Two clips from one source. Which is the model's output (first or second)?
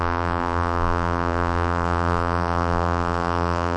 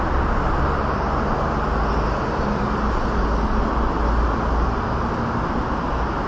first